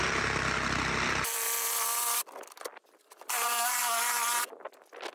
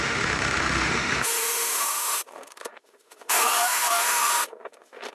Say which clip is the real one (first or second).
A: first